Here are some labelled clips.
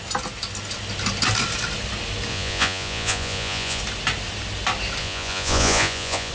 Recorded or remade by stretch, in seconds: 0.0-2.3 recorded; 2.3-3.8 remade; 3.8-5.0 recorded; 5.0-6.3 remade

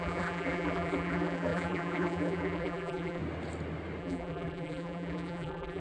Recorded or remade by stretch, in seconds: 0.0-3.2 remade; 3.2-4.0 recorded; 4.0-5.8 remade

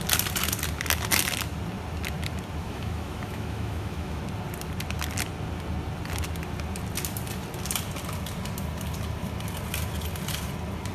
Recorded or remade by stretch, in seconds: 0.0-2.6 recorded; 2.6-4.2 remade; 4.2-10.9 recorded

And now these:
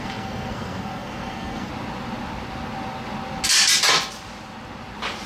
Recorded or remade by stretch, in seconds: 0.0-1.7 remade; 1.7-5.3 recorded

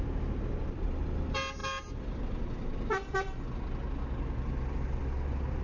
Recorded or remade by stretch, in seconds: 0.0-5.6 recorded